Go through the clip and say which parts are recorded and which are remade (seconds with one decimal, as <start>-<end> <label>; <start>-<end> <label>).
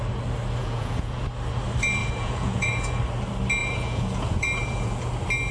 0.0-0.6 recorded; 0.6-1.2 remade; 1.2-2.0 recorded; 2.0-3.0 remade; 3.0-3.6 recorded; 3.6-5.0 remade; 5.0-5.5 recorded